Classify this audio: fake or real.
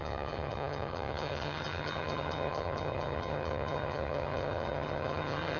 fake